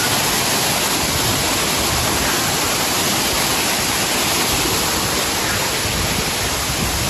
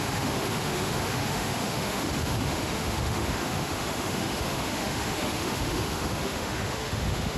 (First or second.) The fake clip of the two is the second